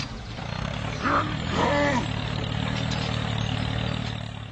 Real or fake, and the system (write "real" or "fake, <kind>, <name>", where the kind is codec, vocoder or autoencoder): real